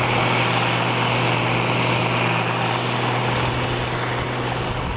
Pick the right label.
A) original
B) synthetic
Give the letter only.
A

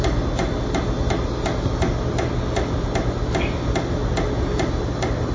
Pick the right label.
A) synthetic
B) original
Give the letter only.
B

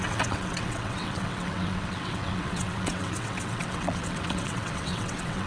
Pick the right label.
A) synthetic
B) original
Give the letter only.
A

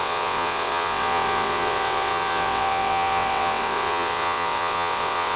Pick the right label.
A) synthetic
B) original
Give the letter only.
A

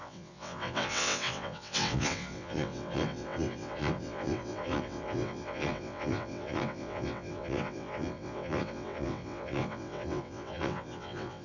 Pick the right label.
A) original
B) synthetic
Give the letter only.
B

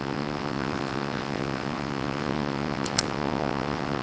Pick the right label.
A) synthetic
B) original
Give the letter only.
A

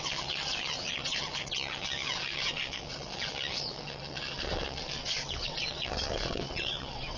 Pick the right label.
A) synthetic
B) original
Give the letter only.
A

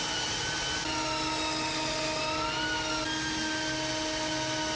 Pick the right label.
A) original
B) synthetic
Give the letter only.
A